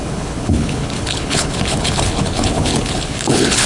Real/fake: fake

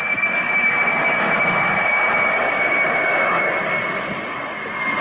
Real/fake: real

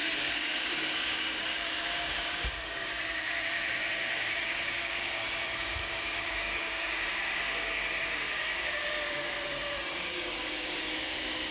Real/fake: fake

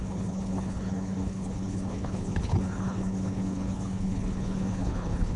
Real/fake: fake